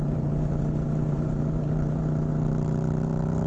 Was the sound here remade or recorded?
remade